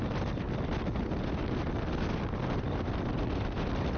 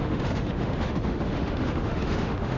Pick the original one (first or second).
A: first